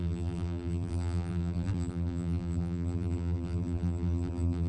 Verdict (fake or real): fake